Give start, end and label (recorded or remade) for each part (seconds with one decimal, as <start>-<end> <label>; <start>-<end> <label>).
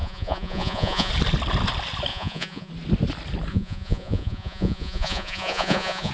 0.0-1.1 remade; 1.1-2.1 recorded; 2.1-2.7 remade; 2.7-3.5 recorded; 3.5-6.1 remade